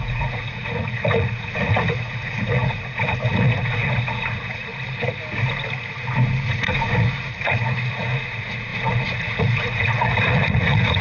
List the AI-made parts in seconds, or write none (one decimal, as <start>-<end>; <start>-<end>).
0.0-4.7; 6.5-11.0